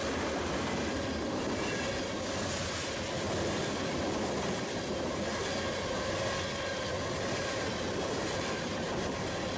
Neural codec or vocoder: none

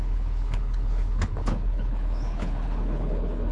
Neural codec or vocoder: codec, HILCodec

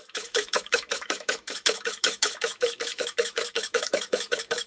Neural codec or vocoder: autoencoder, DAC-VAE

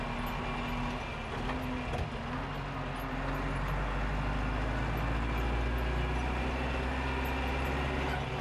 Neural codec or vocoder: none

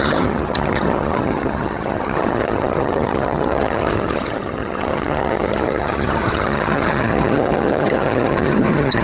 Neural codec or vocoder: vocoder, HiFi-GAN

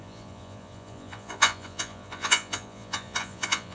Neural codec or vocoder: vocoder, Vocos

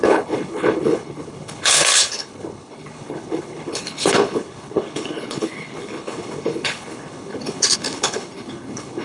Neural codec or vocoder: codec, HILCodec